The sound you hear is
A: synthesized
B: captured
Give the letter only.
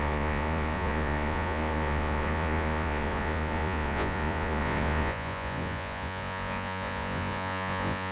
A